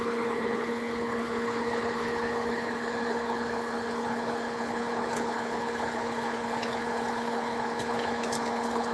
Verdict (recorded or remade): remade